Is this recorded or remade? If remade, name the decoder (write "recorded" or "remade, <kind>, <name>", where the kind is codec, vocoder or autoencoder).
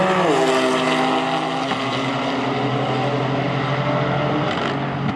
recorded